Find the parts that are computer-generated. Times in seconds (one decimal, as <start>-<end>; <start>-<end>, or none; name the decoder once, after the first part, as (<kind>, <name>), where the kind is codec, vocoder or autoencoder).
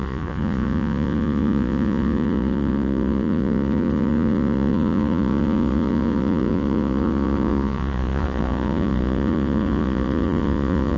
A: 0.0-11.0 (vocoder, Vocos)